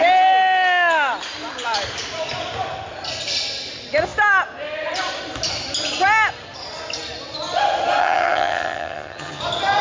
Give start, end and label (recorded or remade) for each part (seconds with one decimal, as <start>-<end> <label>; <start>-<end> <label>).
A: 0.0-8.0 recorded; 8.0-9.4 remade; 9.4-9.8 recorded